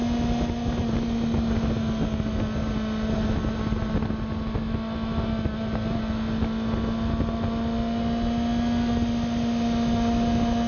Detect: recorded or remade recorded